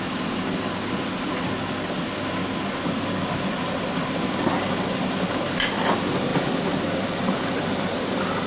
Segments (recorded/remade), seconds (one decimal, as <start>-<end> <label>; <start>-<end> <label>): 0.0-8.5 recorded